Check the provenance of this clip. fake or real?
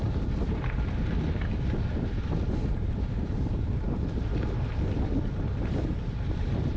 fake